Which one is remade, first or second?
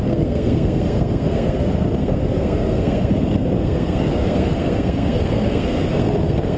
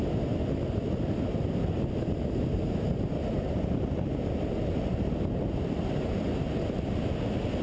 first